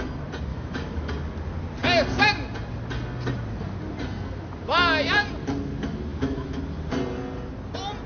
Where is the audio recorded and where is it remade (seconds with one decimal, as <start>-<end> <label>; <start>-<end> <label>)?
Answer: 0.0-0.5 recorded; 0.5-1.1 remade; 1.1-6.1 recorded; 6.1-6.6 remade; 6.6-8.1 recorded

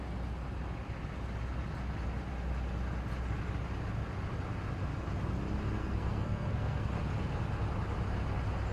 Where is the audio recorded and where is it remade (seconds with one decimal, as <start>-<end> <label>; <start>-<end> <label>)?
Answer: 0.0-5.8 recorded; 5.8-6.9 remade; 6.9-8.7 recorded

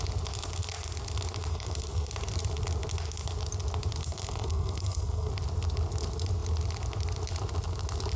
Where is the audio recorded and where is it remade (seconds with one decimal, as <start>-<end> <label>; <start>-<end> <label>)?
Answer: 0.0-1.5 recorded; 1.5-2.1 remade; 2.1-4.0 recorded; 4.0-5.3 remade; 5.3-8.2 recorded

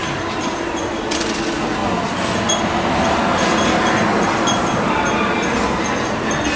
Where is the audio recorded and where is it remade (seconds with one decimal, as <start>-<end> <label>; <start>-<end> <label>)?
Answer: 0.0-6.6 recorded

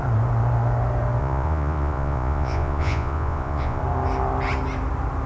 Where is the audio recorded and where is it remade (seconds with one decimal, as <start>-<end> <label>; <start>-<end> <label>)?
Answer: 0.0-1.2 recorded; 1.2-3.8 remade; 3.8-5.3 recorded

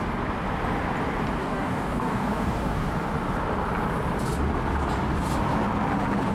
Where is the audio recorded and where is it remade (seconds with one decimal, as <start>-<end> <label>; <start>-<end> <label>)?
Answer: 0.0-1.4 recorded; 1.4-2.9 remade; 2.9-6.3 recorded